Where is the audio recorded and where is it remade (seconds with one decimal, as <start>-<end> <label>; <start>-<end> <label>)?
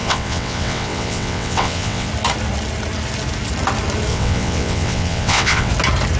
0.0-2.1 remade; 2.1-4.1 recorded; 4.1-5.7 remade; 5.7-6.2 recorded